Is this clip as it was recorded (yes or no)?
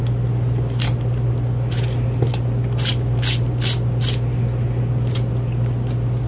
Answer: yes